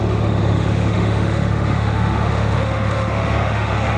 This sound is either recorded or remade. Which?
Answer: remade